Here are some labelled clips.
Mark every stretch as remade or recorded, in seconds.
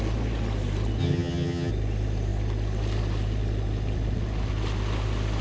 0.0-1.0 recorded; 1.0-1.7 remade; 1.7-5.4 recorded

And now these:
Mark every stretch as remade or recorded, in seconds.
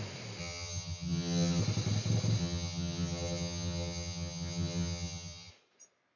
0.0-0.4 recorded; 0.4-1.6 remade; 1.6-2.4 recorded; 2.4-5.5 remade; 5.5-6.2 recorded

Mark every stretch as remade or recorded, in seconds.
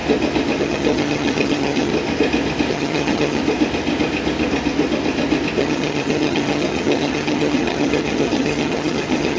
0.0-0.6 recorded; 0.6-1.9 remade; 1.9-2.7 recorded; 2.7-3.4 remade; 3.4-5.6 recorded; 5.6-9.4 remade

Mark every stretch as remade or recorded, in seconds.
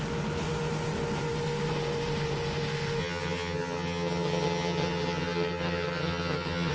0.0-3.0 recorded; 3.0-6.7 remade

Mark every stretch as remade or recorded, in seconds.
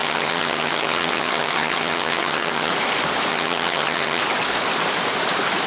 0.0-2.7 remade; 2.7-3.3 recorded; 3.3-4.2 remade; 4.2-5.7 recorded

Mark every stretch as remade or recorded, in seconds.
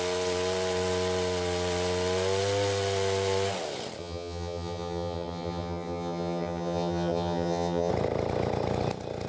0.0-4.0 recorded; 4.0-7.9 remade; 7.9-9.3 recorded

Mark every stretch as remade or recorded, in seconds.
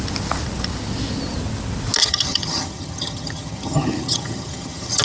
0.0-2.0 recorded; 2.0-5.0 remade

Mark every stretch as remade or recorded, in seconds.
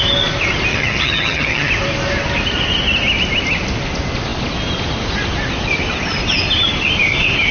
0.0-0.7 recorded; 0.7-1.7 remade; 1.7-7.5 recorded